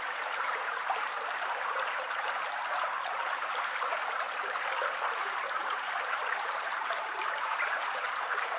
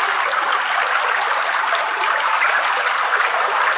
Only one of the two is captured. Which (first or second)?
second